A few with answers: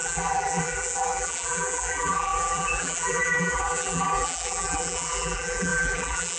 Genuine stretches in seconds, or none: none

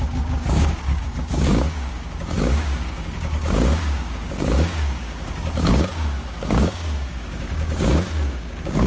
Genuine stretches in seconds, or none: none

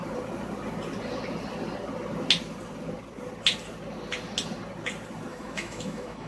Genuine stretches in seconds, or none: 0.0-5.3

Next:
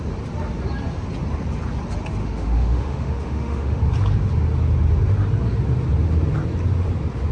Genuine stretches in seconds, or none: 0.0-2.2; 3.8-7.3